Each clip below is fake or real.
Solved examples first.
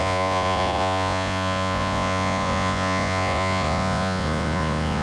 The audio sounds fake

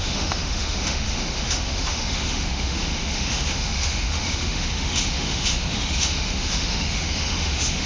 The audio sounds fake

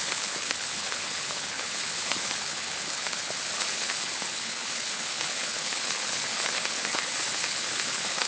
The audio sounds fake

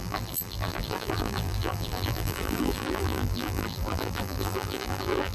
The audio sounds fake